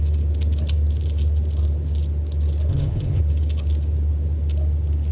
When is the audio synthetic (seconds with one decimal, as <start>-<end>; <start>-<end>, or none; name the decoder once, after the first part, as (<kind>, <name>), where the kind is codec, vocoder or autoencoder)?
2.7-3.2 (vocoder, HiFi-GAN)